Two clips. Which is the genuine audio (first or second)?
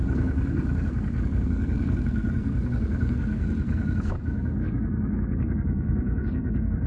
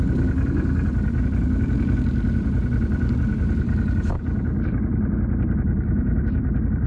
second